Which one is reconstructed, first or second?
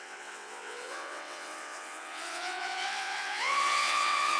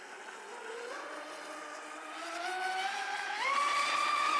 first